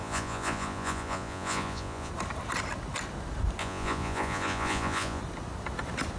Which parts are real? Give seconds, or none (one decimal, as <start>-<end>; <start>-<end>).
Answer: 2.1-3.6; 5.2-6.2